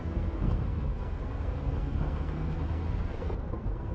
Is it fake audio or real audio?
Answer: fake